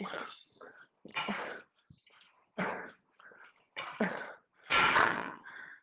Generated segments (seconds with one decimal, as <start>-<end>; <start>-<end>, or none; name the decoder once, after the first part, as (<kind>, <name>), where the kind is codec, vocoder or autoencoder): 0.0-1.1 (vocoder, Vocos); 3.6-5.8